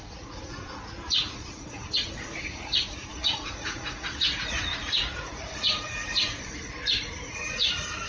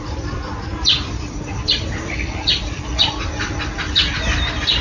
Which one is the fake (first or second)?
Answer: first